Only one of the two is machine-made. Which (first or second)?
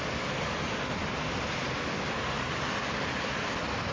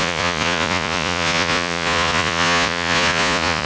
second